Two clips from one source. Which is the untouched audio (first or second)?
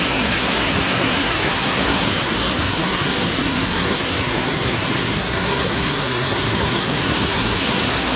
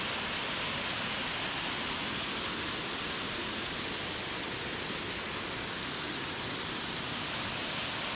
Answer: second